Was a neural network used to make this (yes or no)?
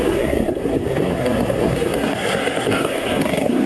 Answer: yes